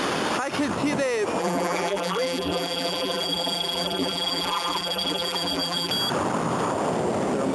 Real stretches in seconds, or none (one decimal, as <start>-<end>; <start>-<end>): 0.0-1.4; 5.9-7.5